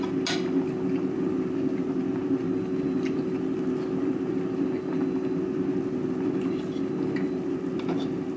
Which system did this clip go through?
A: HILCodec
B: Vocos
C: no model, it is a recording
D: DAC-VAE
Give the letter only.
C